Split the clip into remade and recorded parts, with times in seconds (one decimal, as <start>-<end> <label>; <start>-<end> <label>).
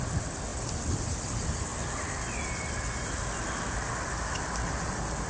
0.0-5.3 recorded